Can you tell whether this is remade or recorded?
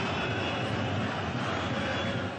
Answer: recorded